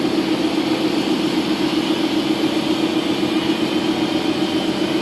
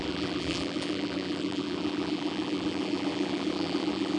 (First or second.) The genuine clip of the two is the first